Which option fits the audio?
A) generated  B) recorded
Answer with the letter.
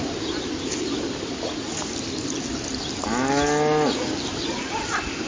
B